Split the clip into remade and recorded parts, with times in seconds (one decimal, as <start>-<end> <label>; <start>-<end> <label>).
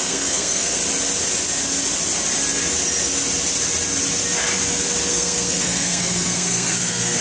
0.0-0.8 remade; 0.8-5.1 recorded; 5.1-7.2 remade